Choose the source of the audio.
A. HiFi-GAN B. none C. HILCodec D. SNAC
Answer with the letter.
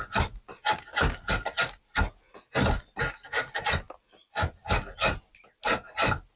B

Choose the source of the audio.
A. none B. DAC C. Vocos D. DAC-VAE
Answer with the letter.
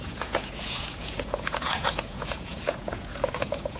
C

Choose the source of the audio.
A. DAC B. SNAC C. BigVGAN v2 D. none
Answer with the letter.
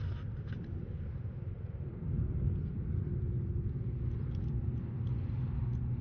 C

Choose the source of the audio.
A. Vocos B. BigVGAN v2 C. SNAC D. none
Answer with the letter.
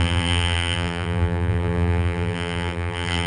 B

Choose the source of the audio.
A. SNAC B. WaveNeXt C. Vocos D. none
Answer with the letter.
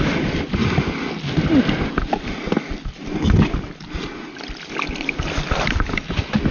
D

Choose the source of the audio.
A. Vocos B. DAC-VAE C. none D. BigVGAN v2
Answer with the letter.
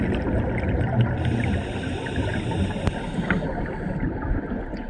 C